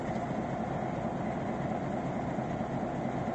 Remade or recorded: recorded